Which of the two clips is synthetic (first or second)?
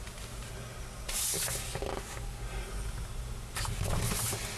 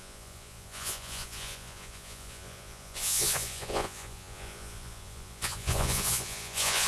second